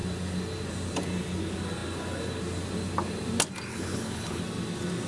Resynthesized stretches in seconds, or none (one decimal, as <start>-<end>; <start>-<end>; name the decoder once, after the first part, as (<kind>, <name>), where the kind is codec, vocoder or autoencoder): 3.7-4.4 (codec, HILCodec)